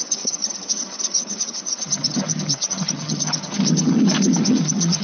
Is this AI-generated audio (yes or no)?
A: yes